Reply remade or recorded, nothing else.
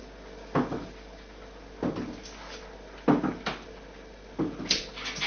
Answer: recorded